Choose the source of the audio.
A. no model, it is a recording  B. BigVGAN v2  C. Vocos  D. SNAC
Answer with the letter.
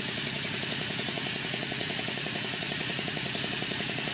C